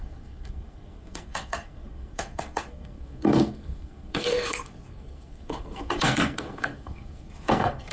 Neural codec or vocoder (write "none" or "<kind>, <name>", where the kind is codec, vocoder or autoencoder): codec, SNAC